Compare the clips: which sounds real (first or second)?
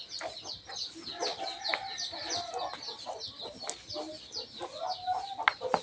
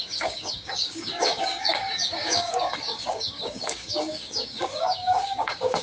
first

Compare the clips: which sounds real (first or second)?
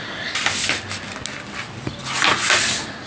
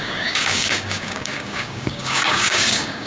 first